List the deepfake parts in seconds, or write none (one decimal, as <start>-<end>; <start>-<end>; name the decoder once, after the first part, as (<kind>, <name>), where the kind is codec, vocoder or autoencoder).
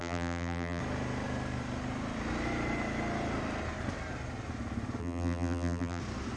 0.0-0.8 (vocoder, BigVGAN v2); 5.0-6.0